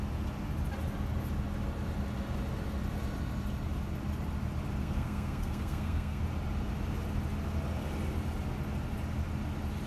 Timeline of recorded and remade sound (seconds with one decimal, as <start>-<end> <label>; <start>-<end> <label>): 0.0-4.8 recorded; 4.8-6.2 remade; 6.2-9.9 recorded